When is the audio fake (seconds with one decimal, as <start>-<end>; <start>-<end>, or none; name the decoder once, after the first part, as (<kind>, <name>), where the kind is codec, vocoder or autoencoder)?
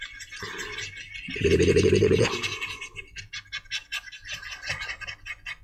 none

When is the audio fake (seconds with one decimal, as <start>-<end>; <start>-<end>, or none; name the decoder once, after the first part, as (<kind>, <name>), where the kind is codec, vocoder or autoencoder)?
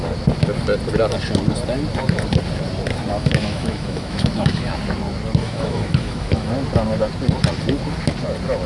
3.2-4.7 (autoencoder, DAC-VAE); 5.4-6.5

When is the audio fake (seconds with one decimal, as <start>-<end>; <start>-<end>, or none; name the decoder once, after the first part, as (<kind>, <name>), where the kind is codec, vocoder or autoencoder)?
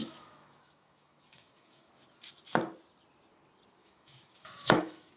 0.0-1.9 (autoencoder, DAC-VAE); 3.8-5.2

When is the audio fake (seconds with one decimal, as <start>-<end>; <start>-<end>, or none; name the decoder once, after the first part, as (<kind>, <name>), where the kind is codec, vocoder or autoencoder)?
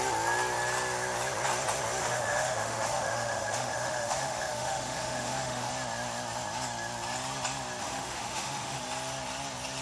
2.0-5.7 (autoencoder, DAC-VAE); 7.8-8.8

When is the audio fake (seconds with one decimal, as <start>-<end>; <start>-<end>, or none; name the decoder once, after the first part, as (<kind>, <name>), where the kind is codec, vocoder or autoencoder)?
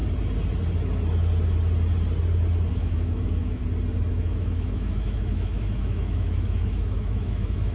2.7-3.6 (autoencoder, DAC-VAE); 4.1-7.7